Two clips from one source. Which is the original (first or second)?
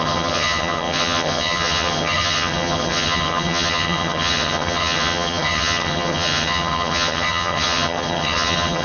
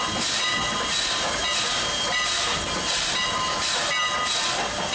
second